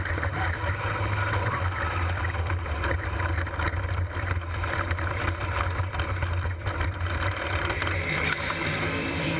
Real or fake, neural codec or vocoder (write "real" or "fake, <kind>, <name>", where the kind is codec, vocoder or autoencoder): fake, vocoder, BigVGAN v2